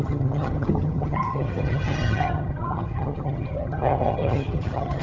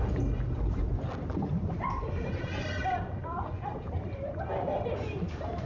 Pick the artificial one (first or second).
first